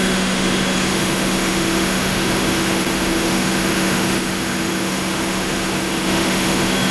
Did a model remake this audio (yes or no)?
yes